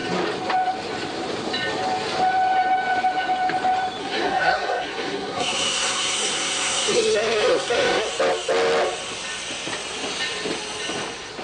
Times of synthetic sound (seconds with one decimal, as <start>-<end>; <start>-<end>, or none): 4.0-8.1